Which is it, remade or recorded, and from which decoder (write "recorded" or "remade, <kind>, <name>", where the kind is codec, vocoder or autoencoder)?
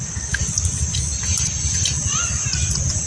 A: recorded